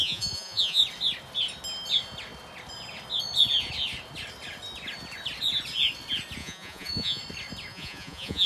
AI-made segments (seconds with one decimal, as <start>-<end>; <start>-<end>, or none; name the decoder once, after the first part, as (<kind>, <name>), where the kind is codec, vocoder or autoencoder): 0.0-0.8 (vocoder, Vocos); 6.4-7.2; 7.7-8.5